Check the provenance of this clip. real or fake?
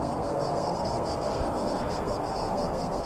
fake